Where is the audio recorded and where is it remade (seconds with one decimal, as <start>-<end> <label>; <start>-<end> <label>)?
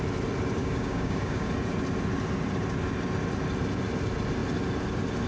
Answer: 0.0-0.6 recorded; 0.6-1.5 remade; 1.5-5.3 recorded